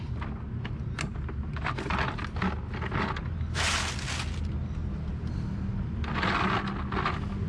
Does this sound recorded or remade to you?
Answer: recorded